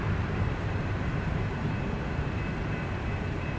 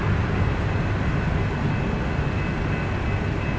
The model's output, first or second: first